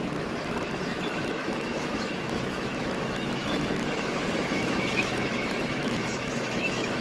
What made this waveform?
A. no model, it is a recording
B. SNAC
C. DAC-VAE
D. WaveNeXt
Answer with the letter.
C